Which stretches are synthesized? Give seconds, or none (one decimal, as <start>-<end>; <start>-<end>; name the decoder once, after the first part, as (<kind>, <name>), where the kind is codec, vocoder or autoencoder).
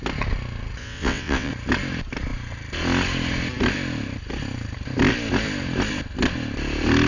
0.8-1.5 (vocoder, WaveNeXt)